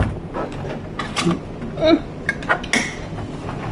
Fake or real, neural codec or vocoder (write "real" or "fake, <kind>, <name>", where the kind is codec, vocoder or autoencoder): real